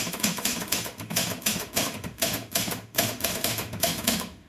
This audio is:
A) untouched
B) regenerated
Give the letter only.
B